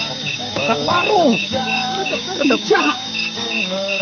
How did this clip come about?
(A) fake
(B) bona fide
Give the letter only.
A